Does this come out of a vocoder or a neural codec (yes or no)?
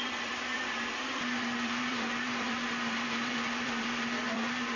yes